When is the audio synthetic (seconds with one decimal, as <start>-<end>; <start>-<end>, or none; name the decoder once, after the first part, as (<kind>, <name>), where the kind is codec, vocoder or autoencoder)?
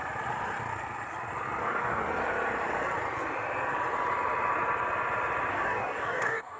1.6-2.0 (codec, DAC); 5.5-6.6